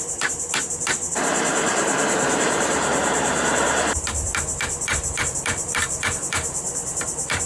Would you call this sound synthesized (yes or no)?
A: yes